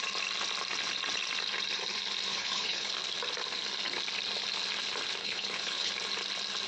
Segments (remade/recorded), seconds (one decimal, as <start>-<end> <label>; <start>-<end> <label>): 0.0-2.3 recorded; 2.3-2.9 remade; 2.9-5.2 recorded; 5.2-5.9 remade; 5.9-6.7 recorded